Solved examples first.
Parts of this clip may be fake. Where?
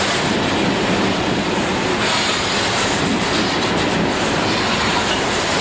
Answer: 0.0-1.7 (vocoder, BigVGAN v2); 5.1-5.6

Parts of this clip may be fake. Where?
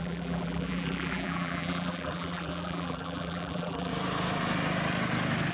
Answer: 0.0-3.9 (vocoder, BigVGAN v2)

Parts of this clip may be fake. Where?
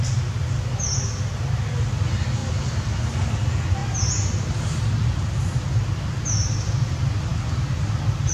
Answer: none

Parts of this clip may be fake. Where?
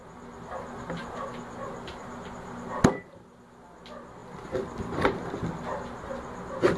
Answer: 4.2-5.4 (vocoder, BigVGAN v2)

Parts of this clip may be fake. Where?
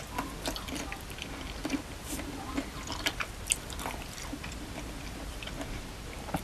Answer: 1.6-5.4 (vocoder, BigVGAN v2)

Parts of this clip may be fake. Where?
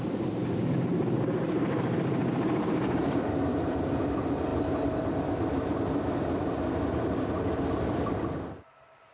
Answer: 0.0-9.1 (vocoder, BigVGAN v2)